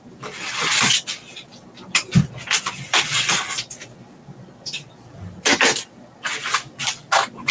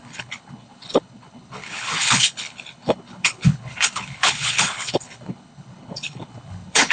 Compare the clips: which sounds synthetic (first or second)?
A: second